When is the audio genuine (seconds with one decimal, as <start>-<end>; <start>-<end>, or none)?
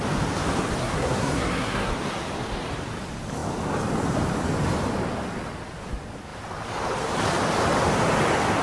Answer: 0.0-0.8; 1.9-8.6